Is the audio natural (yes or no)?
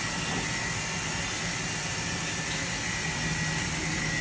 yes